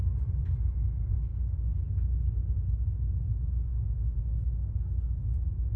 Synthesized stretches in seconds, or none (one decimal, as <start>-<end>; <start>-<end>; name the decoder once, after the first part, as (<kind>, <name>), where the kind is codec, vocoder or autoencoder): 3.7-4.2 (autoencoder, DAC-VAE)